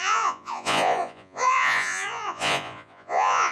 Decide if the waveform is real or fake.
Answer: fake